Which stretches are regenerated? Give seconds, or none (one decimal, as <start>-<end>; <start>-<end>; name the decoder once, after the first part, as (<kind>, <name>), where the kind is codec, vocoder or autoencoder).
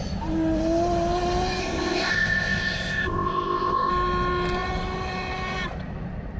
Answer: 1.6-3.9 (codec, ZipCodec)